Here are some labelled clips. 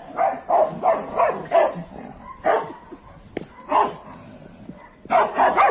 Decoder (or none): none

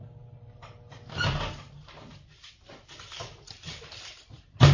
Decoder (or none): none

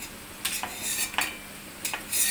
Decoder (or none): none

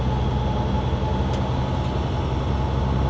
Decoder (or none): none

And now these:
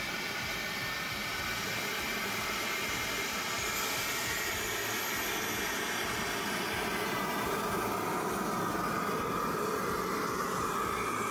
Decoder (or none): none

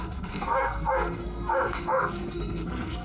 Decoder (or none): codec, SNAC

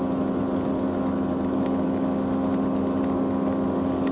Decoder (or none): none